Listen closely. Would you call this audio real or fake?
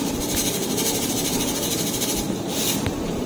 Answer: fake